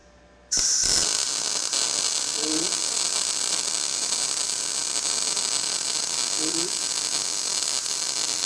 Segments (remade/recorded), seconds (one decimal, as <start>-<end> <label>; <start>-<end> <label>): 0.0-3.5 recorded; 3.5-3.9 remade; 3.9-5.4 recorded; 5.4-6.2 remade; 6.2-7.4 recorded; 7.4-8.5 remade